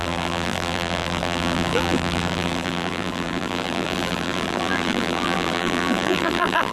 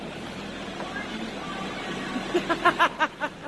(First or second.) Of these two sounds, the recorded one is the second